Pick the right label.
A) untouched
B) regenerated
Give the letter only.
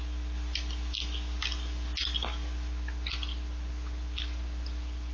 A